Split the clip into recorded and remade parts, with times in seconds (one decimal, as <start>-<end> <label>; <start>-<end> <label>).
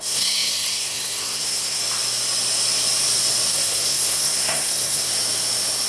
0.0-1.8 remade; 1.8-3.5 recorded; 3.5-5.1 remade; 5.1-5.9 recorded